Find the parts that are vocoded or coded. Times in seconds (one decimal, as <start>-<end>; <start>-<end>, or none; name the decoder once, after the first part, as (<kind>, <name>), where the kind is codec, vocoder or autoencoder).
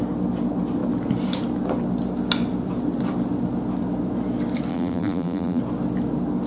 4.7-5.6 (vocoder, BigVGAN v2)